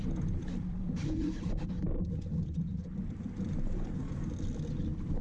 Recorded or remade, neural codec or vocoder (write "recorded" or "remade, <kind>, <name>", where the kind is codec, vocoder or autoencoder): remade, vocoder, BigVGAN v2